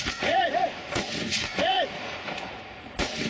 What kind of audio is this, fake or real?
fake